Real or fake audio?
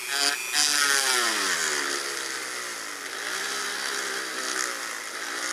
real